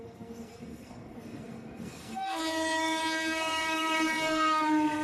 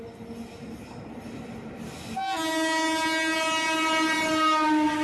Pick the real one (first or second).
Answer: second